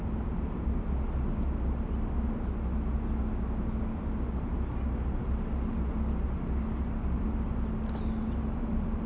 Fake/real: real